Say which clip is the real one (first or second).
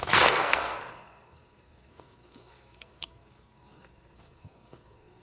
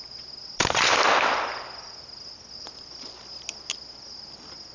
second